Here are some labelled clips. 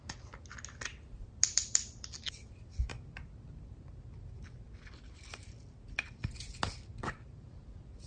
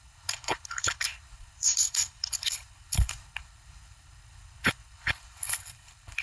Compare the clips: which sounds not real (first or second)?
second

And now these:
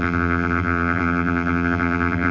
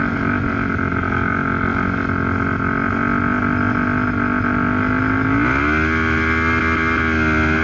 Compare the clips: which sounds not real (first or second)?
first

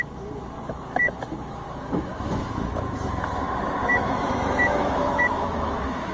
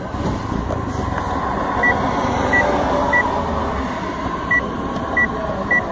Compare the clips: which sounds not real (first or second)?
first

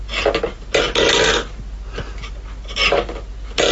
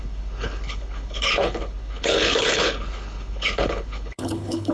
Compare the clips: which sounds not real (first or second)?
second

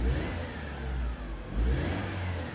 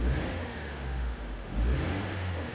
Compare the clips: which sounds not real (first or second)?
second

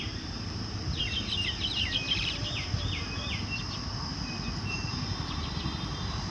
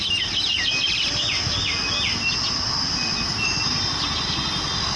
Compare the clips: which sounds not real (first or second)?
first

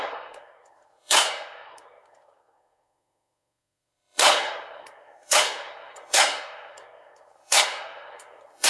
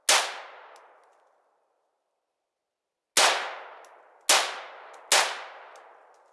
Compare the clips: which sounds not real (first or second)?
first